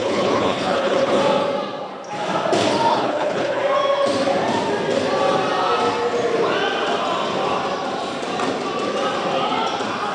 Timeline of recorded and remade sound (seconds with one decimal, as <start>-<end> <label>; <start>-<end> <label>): 0.0-1.2 remade; 1.2-2.9 recorded; 2.9-3.6 remade; 3.6-10.1 recorded